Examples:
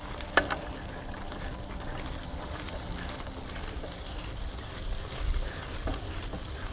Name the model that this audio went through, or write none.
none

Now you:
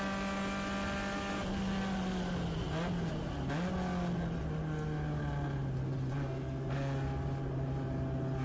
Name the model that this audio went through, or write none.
none